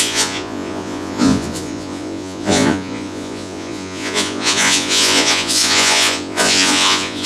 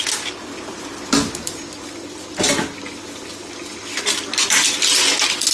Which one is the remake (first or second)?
first